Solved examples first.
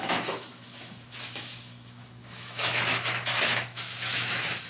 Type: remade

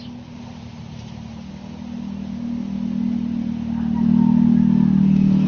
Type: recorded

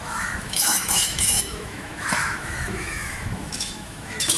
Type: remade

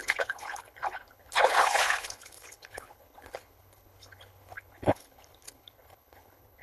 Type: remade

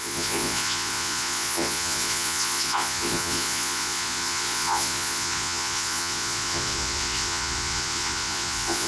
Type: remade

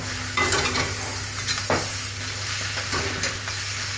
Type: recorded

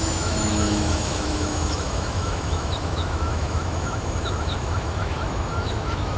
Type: remade